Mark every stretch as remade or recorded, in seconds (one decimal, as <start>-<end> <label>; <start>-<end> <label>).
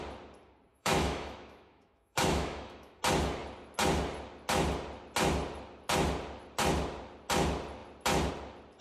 0.0-0.7 recorded; 0.7-3.0 remade; 3.0-8.8 recorded